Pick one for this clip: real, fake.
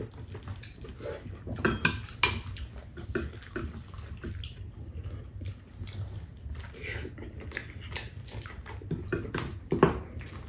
real